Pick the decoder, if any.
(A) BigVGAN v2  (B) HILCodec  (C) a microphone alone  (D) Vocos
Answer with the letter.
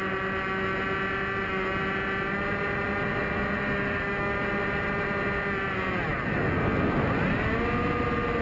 C